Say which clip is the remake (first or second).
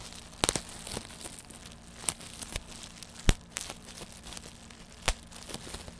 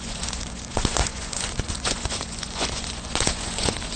second